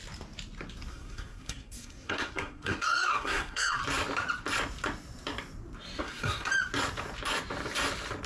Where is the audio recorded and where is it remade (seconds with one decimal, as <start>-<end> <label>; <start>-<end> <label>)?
0.0-0.9 recorded; 0.9-3.8 remade; 3.8-6.0 recorded; 6.0-6.5 remade; 6.5-8.3 recorded